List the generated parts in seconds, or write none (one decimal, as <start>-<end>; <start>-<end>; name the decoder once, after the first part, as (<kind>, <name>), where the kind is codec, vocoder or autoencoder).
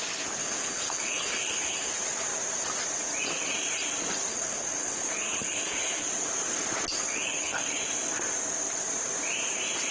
0.4-1.9 (codec, HILCodec); 4.3-6.1; 7.1-7.8